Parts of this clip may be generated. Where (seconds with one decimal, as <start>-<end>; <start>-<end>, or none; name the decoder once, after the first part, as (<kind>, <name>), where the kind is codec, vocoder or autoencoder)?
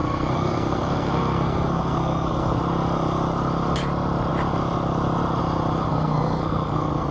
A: 0.0-2.6 (codec, SNAC); 5.9-7.1